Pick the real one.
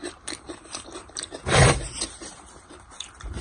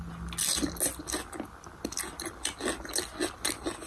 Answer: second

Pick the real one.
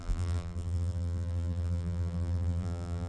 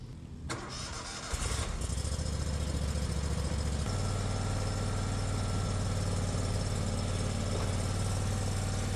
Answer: second